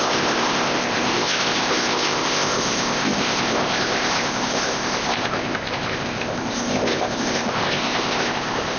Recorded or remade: remade